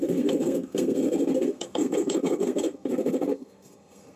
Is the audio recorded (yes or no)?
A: no